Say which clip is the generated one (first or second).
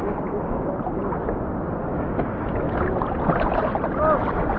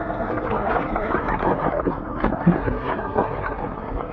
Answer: second